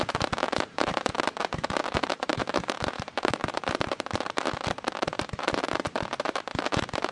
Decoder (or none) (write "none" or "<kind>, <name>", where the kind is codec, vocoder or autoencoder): vocoder, BigVGAN v2